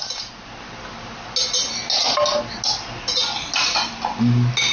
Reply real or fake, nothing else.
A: real